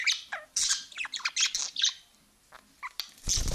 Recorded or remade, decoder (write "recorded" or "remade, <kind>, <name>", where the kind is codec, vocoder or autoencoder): recorded